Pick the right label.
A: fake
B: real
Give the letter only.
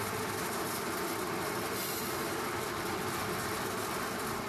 A